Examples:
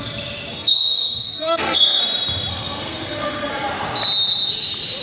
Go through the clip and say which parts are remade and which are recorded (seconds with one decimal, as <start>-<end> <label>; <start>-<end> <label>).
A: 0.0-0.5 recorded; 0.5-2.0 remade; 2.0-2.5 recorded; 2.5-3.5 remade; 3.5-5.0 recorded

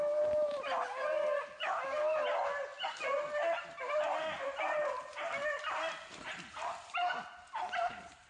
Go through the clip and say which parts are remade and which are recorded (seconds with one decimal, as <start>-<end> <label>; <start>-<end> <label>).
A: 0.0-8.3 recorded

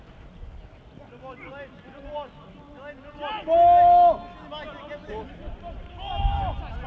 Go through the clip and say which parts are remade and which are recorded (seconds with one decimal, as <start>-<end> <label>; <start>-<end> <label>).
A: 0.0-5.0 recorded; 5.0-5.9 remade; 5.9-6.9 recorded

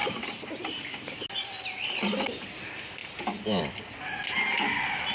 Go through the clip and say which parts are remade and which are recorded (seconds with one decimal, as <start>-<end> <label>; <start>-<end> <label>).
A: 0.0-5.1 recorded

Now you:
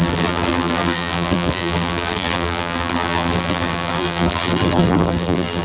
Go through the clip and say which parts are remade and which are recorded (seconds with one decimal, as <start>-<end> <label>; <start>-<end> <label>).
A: 0.0-5.6 remade